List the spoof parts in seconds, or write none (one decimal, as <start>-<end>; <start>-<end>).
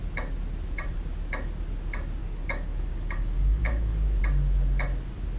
2.2-4.2